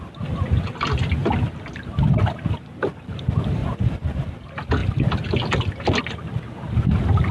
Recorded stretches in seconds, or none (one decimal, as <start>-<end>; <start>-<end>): 0.0-3.6; 4.3-7.3

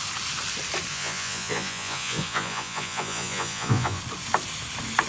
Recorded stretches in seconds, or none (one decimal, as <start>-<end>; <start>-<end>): 0.0-0.9; 4.0-5.1

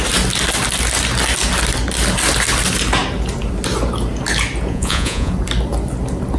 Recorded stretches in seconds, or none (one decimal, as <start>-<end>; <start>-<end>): 0.0-4.7; 5.3-6.4

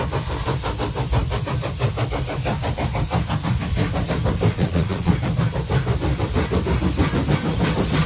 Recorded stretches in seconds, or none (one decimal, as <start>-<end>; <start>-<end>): 0.0-4.5; 5.1-8.1

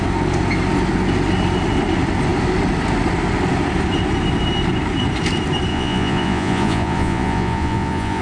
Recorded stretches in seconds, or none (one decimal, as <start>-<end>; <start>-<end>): 0.0-5.7

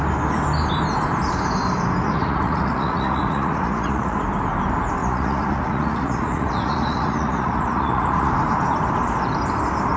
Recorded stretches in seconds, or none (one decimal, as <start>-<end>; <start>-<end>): 0.0-2.0; 4.2-5.0; 8.3-10.0

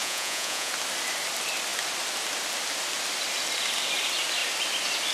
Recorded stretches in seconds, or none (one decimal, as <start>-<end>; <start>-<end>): 0.7-5.1

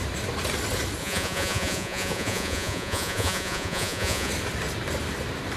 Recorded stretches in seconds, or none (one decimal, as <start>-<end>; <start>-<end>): 0.0-1.0; 4.3-5.6